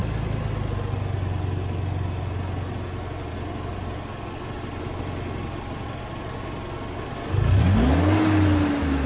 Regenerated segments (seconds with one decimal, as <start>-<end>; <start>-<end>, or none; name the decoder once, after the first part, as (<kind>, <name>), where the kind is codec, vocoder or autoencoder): none